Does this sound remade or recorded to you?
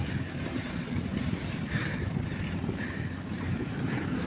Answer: recorded